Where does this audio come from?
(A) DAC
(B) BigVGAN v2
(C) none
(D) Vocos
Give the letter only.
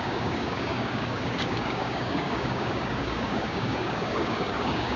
A